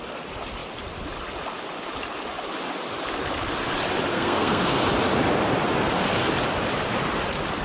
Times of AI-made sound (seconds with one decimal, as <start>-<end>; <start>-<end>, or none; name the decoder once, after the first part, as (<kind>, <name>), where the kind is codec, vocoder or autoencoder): 4.1-4.8 (codec, SNAC)